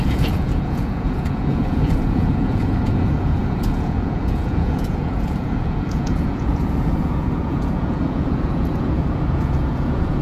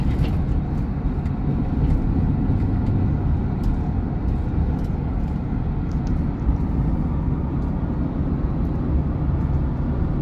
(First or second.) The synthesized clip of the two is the first